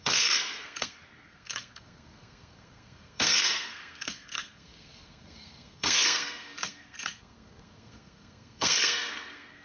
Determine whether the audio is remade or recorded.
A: remade